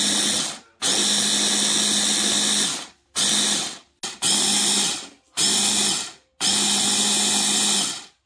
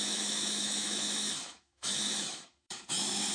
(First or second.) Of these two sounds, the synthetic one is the second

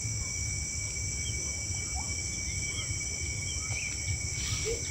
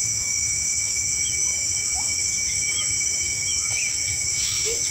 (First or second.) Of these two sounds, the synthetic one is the second